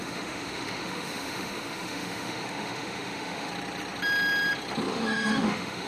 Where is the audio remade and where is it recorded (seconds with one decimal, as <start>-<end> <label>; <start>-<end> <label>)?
0.0-3.5 remade; 3.5-4.9 recorded; 4.9-5.9 remade

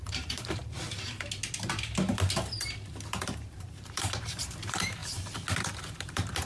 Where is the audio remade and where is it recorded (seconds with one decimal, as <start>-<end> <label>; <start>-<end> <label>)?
0.0-0.6 remade; 0.6-3.1 recorded; 3.1-5.0 remade; 5.0-5.6 recorded; 5.6-6.5 remade

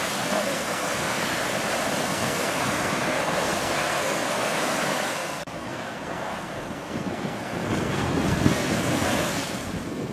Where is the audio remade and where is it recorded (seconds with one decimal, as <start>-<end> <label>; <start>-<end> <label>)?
0.0-1.5 remade; 1.5-2.0 recorded; 2.0-10.1 remade

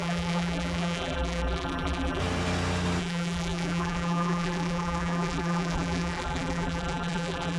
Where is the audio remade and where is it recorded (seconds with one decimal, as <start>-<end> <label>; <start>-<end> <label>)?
0.0-2.2 remade; 2.2-3.0 recorded; 3.0-7.6 remade

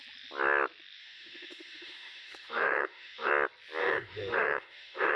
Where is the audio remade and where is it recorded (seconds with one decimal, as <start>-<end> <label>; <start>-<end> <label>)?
0.0-1.0 recorded; 1.0-3.3 remade; 3.3-3.8 recorded; 3.8-5.2 remade